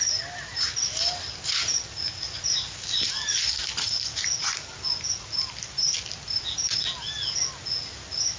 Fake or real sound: real